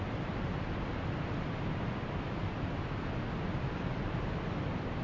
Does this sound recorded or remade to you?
recorded